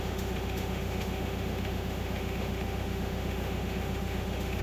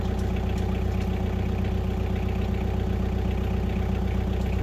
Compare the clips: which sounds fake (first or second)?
first